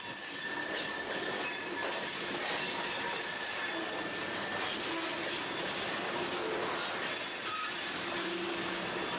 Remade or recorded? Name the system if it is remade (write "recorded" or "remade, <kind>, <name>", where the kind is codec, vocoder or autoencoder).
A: recorded